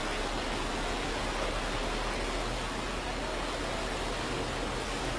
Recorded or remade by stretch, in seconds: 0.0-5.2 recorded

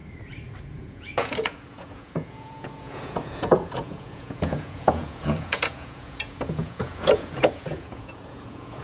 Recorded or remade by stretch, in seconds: 0.0-0.6 recorded; 0.6-8.8 remade

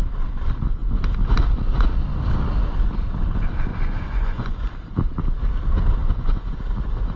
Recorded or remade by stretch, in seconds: 0.0-3.7 recorded; 3.7-4.7 remade; 4.7-6.0 recorded; 6.0-6.5 remade; 6.5-7.2 recorded

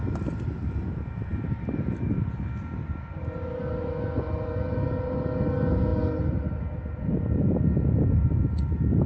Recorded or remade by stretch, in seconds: 0.0-9.1 recorded

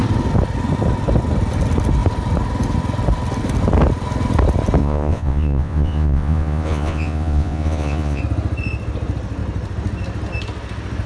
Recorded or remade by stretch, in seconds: 0.0-4.8 recorded; 4.8-8.2 remade; 8.2-11.1 recorded